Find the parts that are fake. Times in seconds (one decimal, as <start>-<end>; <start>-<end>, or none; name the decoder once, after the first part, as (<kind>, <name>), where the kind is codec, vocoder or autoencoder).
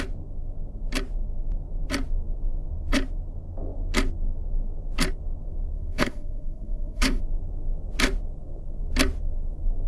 5.7-7.2 (codec, SNAC)